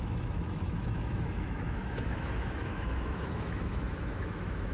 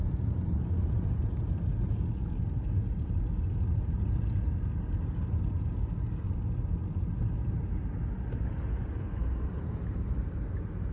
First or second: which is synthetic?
first